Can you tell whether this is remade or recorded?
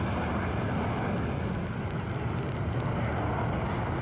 recorded